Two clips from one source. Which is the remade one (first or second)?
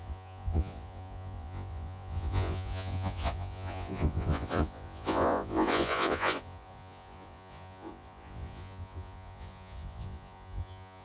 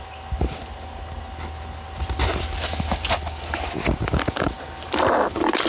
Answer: first